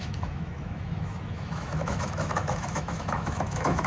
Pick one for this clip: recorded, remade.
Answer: remade